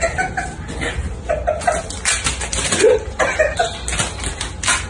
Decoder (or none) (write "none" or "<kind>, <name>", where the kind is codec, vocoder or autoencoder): none